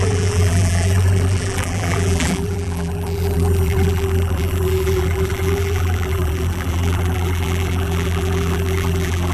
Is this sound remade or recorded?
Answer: remade